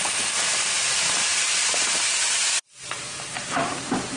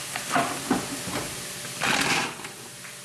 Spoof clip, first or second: first